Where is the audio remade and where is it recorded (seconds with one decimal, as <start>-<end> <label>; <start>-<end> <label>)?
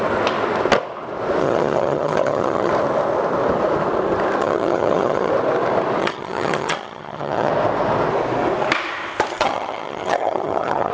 0.0-1.4 recorded; 1.4-2.7 remade; 2.7-4.4 recorded; 4.4-5.3 remade; 5.3-6.0 recorded; 6.0-7.5 remade; 7.5-9.3 recorded; 9.3-10.9 remade